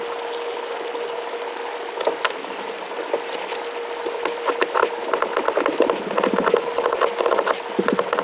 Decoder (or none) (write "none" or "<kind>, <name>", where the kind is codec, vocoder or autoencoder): none